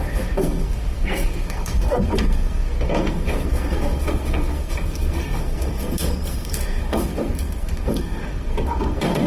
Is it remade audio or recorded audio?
remade